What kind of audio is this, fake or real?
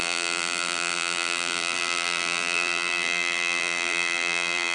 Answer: fake